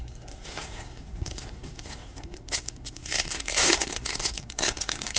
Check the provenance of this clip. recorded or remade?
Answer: remade